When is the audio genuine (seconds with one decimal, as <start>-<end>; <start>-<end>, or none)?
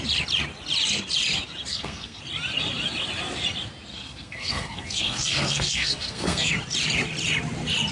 0.0-1.7; 2.2-3.9; 6.5-7.9